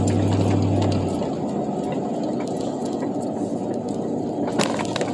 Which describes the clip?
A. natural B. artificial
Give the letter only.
A